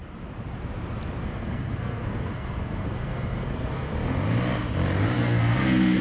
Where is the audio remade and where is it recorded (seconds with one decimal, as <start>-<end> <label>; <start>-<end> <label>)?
0.0-1.2 recorded; 1.2-3.9 remade; 3.9-5.2 recorded; 5.2-6.0 remade